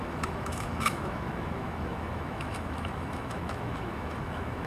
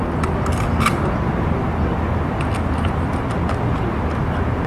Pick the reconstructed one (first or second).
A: first